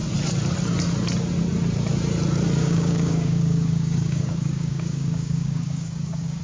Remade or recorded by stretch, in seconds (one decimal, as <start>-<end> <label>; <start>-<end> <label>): 0.0-2.6 recorded; 2.6-6.4 remade

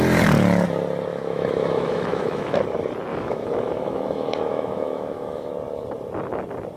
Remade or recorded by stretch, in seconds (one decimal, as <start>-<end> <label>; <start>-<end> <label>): 0.0-1.1 recorded; 1.1-2.6 remade; 2.6-3.1 recorded; 3.1-5.5 remade; 5.5-6.8 recorded

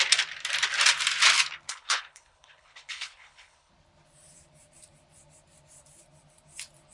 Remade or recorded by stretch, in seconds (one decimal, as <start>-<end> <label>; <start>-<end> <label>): 0.0-1.7 recorded; 1.7-3.7 remade; 3.7-6.9 recorded

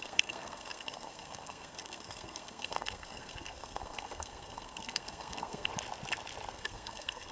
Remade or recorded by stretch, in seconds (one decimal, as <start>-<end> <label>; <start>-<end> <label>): 0.0-5.7 remade; 5.7-6.5 recorded; 6.5-7.3 remade

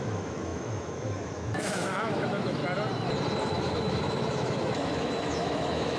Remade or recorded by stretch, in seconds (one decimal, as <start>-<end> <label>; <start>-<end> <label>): 0.0-2.6 remade; 2.6-3.4 recorded; 3.4-6.0 remade